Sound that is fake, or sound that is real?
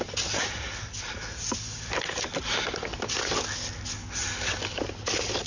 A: real